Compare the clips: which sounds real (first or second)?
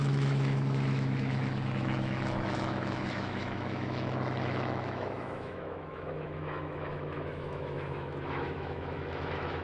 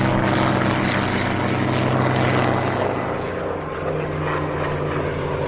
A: second